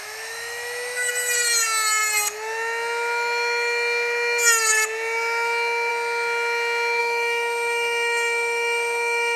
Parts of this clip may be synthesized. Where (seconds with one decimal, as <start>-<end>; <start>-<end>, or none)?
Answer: 0.0-1.1; 7.0-9.4